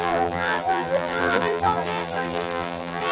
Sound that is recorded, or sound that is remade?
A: remade